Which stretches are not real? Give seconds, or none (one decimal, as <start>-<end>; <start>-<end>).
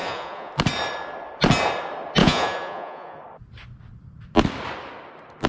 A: 0.0-0.5; 2.2-3.2